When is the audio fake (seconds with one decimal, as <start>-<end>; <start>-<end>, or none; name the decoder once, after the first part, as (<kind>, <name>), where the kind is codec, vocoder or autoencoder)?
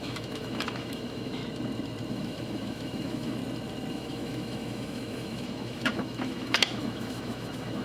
0.0-1.4 (autoencoder, DAC-VAE); 2.1-3.4; 3.9-7.8